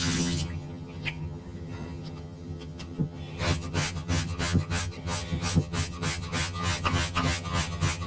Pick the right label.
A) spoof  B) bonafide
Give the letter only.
A